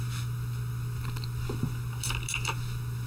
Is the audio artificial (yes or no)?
no